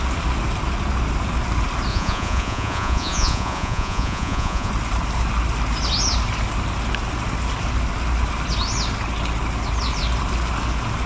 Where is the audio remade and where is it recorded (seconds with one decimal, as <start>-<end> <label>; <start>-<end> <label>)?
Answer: 0.0-1.9 recorded; 1.9-4.7 remade; 4.7-11.1 recorded